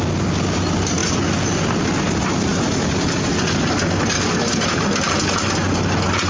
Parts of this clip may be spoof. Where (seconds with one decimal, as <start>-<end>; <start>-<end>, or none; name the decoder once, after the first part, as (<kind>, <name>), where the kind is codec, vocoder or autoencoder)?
none